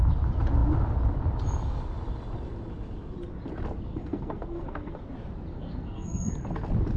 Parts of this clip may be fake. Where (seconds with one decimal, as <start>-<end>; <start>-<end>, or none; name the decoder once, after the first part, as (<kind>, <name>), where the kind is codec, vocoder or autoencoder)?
3.9-5.0 (codec, SNAC); 5.5-6.3